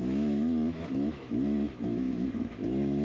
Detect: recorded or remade remade